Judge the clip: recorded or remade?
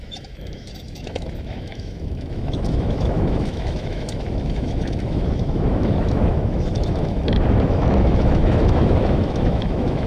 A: remade